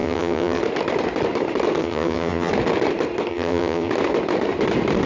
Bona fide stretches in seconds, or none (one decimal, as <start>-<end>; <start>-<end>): 0.6-1.8; 2.5-3.3; 3.9-5.1